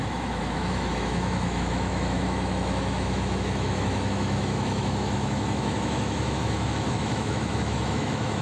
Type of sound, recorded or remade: remade